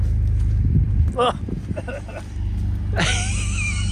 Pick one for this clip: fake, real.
real